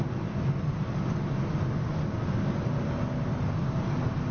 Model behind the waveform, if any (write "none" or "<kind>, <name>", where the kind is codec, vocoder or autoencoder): none